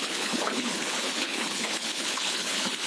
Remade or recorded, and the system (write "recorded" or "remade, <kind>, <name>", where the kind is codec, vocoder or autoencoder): remade, codec, HILCodec